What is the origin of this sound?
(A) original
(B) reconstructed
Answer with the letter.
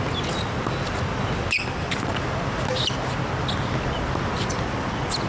A